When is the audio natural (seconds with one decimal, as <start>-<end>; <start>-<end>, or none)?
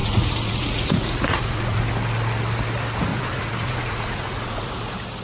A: 1.8-3.1; 4.7-5.2